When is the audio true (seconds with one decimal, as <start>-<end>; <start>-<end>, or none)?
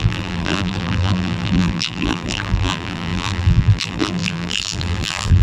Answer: none